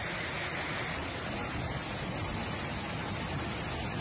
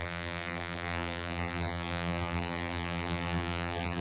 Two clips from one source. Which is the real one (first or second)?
first